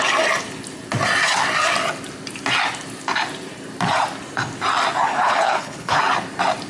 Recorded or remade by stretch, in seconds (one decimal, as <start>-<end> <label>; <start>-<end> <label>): 0.0-5.1 recorded; 5.1-6.0 remade; 6.0-6.7 recorded